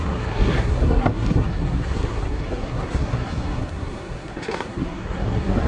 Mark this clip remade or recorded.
remade